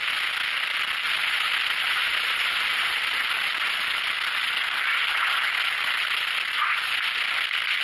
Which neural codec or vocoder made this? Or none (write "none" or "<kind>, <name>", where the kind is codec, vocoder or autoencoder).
none